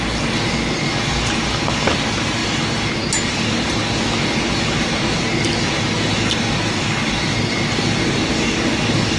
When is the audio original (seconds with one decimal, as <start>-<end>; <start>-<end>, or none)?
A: 0.0-9.2